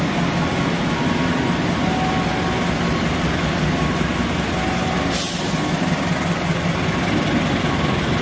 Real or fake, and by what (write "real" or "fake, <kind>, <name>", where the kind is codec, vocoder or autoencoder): real